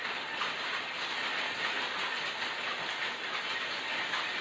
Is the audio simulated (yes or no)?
no